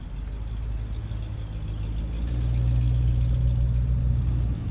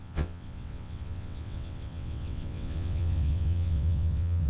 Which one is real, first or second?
first